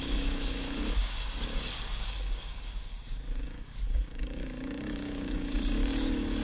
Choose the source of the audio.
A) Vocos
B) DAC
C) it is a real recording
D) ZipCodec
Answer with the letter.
B